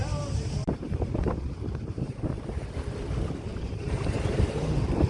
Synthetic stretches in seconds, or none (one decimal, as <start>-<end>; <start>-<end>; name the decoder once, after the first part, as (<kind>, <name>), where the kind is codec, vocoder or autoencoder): 0.0-2.6 (vocoder, BigVGAN v2); 3.5-5.1